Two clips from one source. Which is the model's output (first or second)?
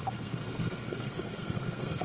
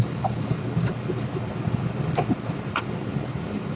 first